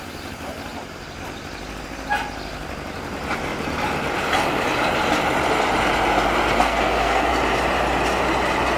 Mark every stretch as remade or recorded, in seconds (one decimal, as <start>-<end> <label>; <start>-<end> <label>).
0.0-6.6 recorded; 6.6-7.3 remade; 7.3-8.8 recorded